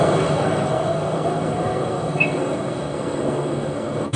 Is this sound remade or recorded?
remade